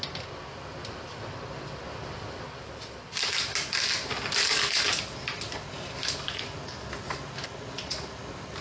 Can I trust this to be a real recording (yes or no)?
yes